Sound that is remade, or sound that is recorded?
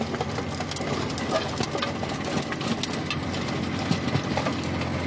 recorded